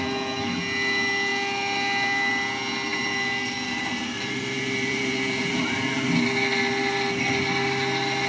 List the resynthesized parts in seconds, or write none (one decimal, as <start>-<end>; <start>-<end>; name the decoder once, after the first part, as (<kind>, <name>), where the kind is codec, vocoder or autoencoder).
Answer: 2.9-6.1 (vocoder, BigVGAN v2)